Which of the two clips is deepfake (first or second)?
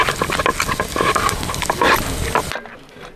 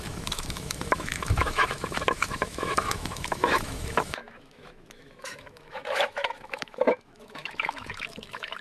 second